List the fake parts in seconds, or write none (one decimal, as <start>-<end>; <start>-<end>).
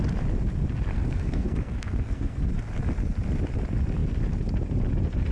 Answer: 0.9-2.5